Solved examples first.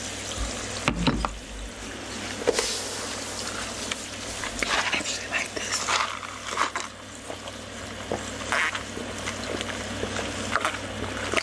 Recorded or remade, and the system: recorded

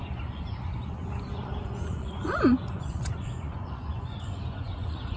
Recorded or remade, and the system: remade, vocoder, Vocos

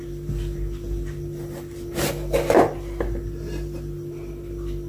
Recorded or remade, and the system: recorded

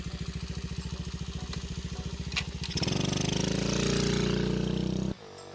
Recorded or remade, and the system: recorded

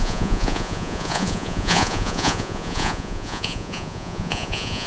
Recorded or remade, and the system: remade, vocoder, Vocos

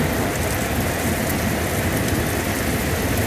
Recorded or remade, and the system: recorded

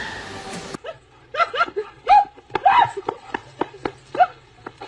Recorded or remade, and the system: recorded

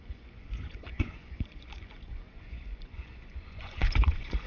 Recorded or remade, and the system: remade, vocoder, Vocos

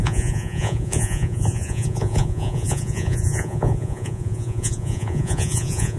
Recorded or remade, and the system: remade, vocoder, Vocos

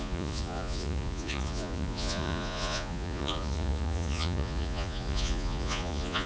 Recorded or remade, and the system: remade, vocoder, Vocos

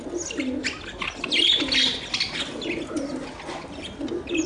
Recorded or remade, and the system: recorded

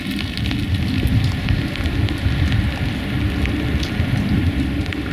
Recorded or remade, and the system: recorded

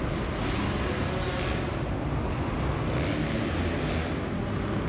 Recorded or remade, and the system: recorded